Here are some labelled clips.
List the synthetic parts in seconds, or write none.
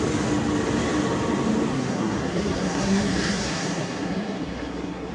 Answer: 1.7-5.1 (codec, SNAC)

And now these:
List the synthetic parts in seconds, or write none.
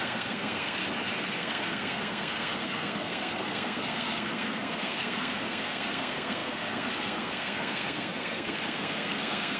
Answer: 0.0-0.8 (codec, SNAC); 1.3-9.6